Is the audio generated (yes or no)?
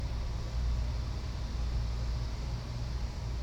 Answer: no